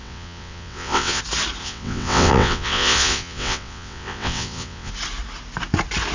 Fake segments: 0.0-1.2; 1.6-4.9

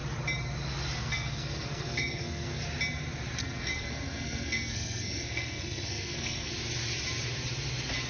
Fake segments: 1.0-2.6; 3.4-6.5

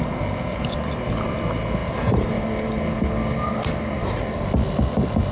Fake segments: 1.8-2.4

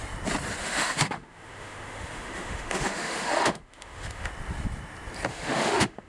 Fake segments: 0.6-4.3; 5.3-6.1